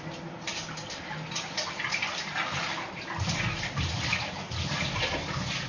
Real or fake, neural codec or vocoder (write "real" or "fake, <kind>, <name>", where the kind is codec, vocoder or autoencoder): fake, vocoder, BigVGAN v2